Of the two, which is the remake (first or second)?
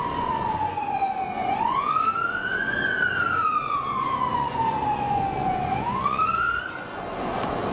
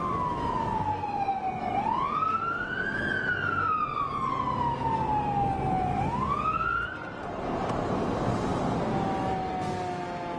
first